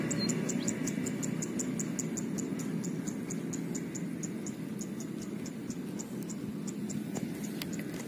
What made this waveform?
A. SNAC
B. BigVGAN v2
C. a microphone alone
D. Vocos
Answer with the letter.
C